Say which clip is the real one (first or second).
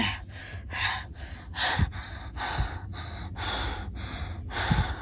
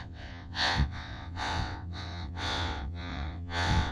first